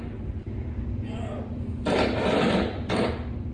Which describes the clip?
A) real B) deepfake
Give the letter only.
B